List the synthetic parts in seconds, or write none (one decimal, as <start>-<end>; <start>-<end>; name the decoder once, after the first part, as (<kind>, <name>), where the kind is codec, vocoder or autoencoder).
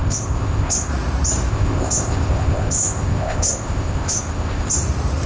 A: 0.0-0.9 (codec, ZipCodec); 1.5-4.7